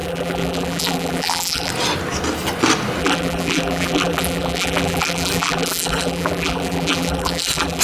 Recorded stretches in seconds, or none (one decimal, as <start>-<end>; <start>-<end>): 1.7-3.0